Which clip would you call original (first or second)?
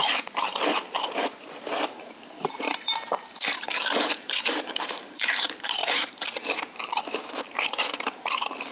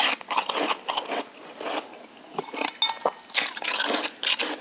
second